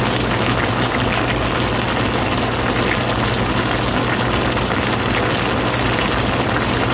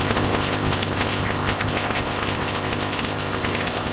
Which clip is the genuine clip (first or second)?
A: first